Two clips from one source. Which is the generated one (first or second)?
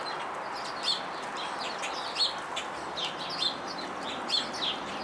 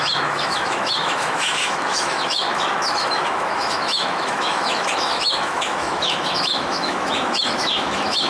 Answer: second